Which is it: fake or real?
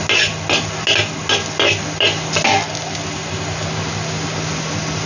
real